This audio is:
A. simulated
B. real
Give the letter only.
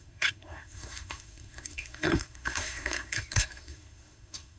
A